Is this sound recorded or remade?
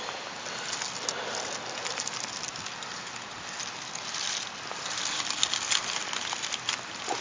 recorded